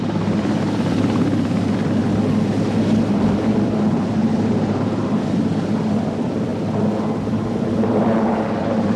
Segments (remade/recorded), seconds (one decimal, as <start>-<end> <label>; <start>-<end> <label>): 0.0-2.0 remade; 2.0-3.1 recorded; 3.1-9.0 remade